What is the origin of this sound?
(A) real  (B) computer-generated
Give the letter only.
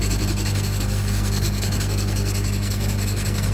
B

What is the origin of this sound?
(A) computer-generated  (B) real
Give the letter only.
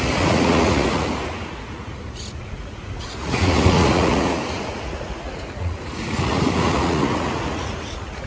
A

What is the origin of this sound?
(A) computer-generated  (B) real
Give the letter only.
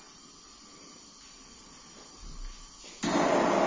B